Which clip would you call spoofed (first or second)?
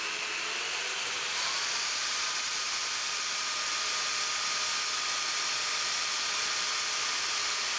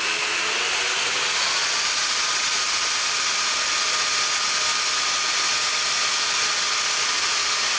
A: first